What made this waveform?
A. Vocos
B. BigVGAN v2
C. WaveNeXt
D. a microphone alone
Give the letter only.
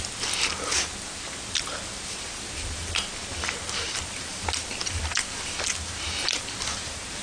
D